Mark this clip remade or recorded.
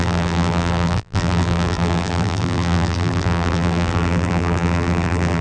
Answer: remade